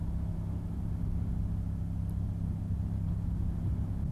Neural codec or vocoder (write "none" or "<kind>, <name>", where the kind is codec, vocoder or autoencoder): none